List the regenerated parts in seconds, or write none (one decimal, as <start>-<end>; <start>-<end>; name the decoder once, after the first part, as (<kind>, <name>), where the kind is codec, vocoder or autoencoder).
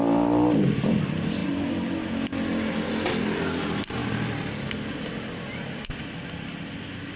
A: none